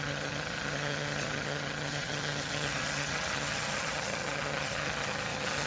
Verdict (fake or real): fake